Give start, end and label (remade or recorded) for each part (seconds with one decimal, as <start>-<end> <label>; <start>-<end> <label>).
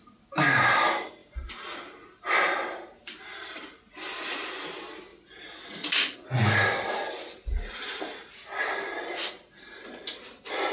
0.0-1.2 recorded; 1.2-4.5 remade; 4.5-5.1 recorded; 5.1-9.5 remade; 9.5-10.7 recorded